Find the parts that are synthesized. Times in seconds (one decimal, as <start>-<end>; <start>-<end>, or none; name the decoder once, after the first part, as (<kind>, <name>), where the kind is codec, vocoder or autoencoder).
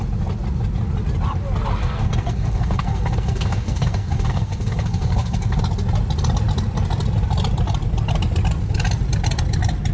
1.8-5.6 (codec, SNAC)